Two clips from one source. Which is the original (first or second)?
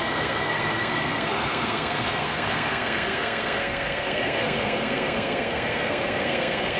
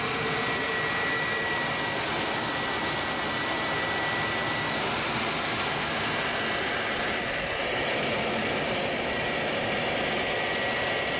second